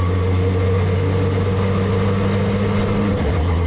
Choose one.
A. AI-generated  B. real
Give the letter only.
B